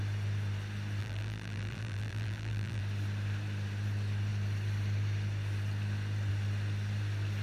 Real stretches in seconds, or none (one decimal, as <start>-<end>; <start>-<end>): 0.0-1.0; 2.8-7.4